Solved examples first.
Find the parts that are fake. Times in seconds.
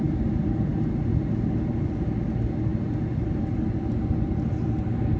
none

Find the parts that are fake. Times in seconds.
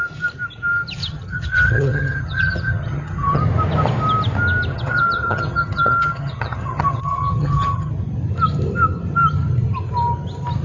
1.0-3.4 (vocoder, HiFi-GAN); 4.7-7.9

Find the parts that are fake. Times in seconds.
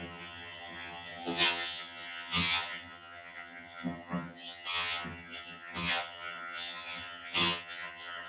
0.0-8.3 (vocoder, HiFi-GAN)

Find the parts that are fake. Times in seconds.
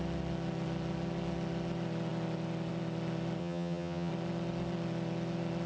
3.4-4.1 (vocoder, HiFi-GAN)